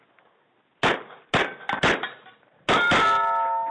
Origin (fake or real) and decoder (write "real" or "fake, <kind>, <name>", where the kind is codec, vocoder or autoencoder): real